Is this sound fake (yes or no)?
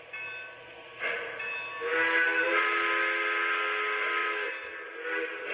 no